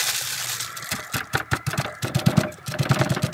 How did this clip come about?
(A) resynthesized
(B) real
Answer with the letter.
B